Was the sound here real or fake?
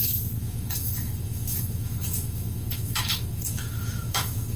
fake